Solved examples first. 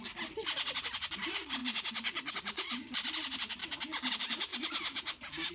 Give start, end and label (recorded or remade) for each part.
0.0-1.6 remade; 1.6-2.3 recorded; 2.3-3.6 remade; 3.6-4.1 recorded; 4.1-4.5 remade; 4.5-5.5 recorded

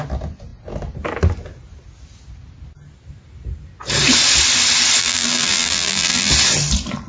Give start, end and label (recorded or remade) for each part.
0.0-5.0 recorded; 5.0-6.3 remade; 6.3-7.1 recorded

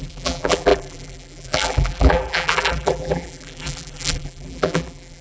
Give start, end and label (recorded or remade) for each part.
0.0-5.2 remade

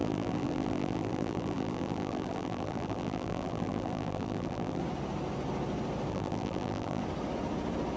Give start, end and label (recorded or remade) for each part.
0.0-4.8 remade; 4.8-6.1 recorded; 6.1-7.0 remade; 7.0-8.0 recorded

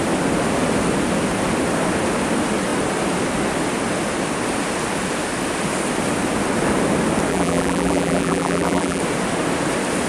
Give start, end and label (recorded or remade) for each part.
0.0-7.3 recorded; 7.3-9.0 remade; 9.0-10.1 recorded

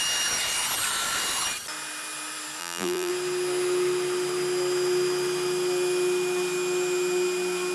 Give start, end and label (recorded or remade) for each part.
0.0-2.6 recorded; 2.6-3.1 remade; 3.1-7.7 recorded

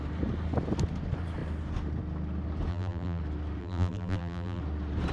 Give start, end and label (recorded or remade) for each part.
0.0-2.7 recorded; 2.7-3.2 remade; 3.2-3.6 recorded; 3.6-4.6 remade; 4.6-5.1 recorded